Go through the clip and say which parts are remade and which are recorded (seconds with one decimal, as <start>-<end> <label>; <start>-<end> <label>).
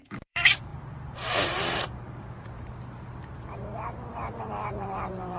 0.0-5.4 remade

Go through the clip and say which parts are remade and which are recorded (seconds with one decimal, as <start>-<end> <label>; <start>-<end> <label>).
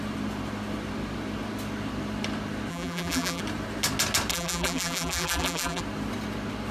0.0-2.7 recorded; 2.7-3.4 remade; 3.4-4.3 recorded; 4.3-5.8 remade; 5.8-6.7 recorded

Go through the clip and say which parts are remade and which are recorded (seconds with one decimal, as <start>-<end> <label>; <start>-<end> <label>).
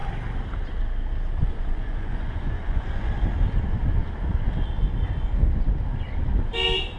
0.0-1.4 recorded; 1.4-3.1 remade; 3.1-7.0 recorded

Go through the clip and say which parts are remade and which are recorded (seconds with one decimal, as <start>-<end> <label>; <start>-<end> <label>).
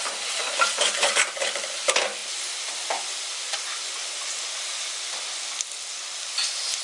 0.0-6.8 recorded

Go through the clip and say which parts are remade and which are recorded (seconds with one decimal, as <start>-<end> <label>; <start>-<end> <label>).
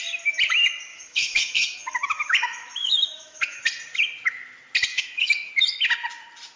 0.0-0.9 recorded; 0.9-3.6 remade; 3.6-4.9 recorded; 4.9-5.5 remade; 5.5-6.6 recorded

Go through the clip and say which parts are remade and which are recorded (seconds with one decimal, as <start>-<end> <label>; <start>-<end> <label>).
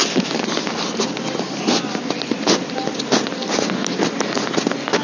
0.0-5.0 recorded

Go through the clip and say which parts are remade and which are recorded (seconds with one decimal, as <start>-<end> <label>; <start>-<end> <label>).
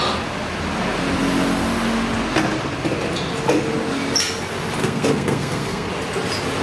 0.0-4.8 recorded; 4.8-5.9 remade; 5.9-6.6 recorded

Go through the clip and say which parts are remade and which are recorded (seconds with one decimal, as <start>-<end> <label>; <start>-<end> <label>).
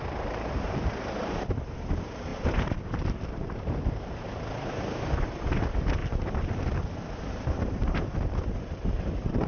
0.0-6.0 remade; 6.0-7.3 recorded; 7.3-9.5 remade